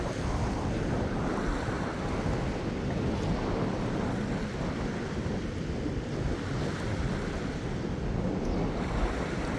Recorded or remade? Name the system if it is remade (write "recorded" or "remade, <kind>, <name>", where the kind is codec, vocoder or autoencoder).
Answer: recorded